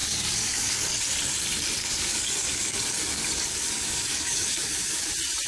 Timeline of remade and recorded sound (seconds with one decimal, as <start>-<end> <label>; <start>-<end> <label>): 0.0-0.9 remade; 0.9-1.8 recorded; 1.8-5.1 remade; 5.1-5.5 recorded